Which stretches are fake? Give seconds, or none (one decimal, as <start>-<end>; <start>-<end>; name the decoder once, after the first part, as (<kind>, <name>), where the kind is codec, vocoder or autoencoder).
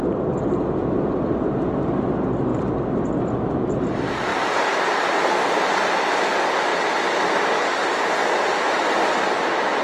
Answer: 2.5-3.1 (vocoder, BigVGAN v2); 4.3-5.3